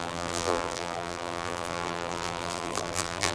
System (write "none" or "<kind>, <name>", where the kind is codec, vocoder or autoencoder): vocoder, BigVGAN v2